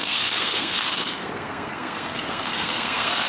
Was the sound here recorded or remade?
remade